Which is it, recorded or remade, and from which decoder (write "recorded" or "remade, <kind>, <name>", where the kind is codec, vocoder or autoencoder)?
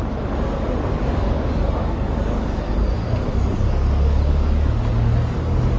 remade, codec, DAC